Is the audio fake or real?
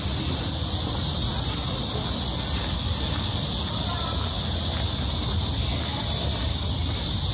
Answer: real